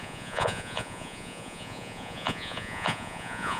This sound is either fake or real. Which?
fake